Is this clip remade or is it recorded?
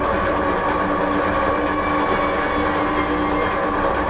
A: recorded